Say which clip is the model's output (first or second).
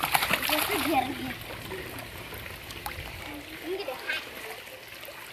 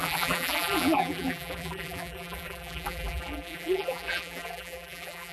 second